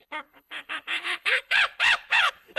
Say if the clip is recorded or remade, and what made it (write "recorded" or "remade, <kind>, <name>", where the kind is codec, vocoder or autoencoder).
remade, codec, HILCodec